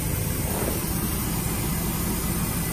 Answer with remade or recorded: recorded